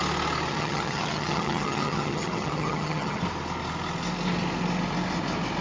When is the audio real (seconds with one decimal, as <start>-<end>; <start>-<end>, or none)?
0.0-0.5; 3.2-5.6